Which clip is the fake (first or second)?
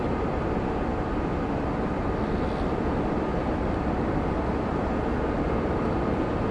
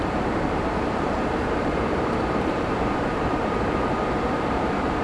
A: second